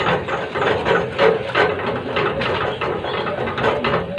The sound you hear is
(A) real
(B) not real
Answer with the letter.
A